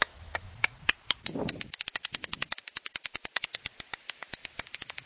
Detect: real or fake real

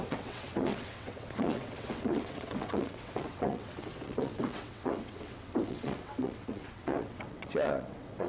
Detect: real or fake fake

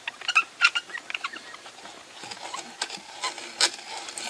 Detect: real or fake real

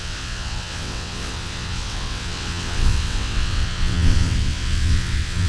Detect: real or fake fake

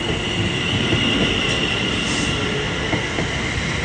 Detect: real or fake real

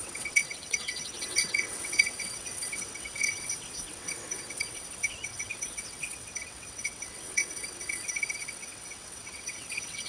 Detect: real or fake fake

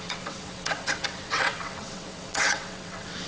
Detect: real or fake fake